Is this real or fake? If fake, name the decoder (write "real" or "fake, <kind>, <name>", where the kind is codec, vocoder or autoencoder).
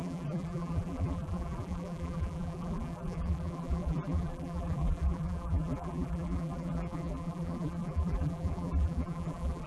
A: fake, vocoder, BigVGAN v2